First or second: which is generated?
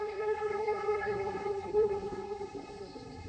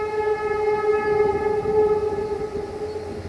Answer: first